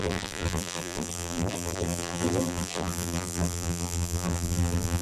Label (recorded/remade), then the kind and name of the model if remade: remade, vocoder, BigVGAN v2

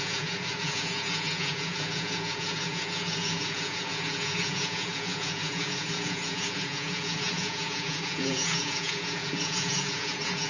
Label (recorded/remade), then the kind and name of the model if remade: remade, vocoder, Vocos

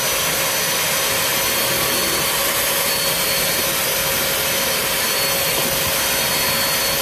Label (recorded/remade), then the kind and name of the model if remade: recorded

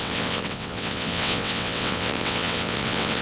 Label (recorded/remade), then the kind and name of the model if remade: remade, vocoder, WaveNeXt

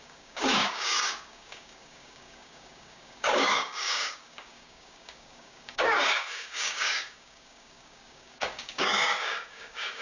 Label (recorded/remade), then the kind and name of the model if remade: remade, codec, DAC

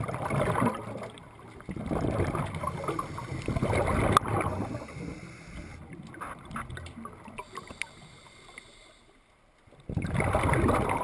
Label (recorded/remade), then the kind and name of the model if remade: recorded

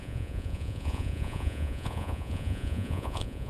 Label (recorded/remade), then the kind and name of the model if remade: remade, vocoder, Vocos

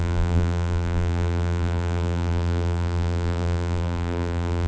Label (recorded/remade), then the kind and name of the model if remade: remade, vocoder, BigVGAN v2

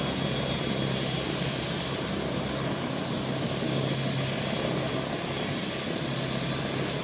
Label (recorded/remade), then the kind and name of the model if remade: recorded